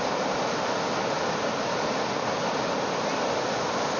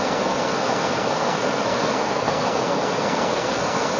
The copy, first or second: second